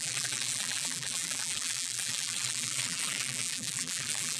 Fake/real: fake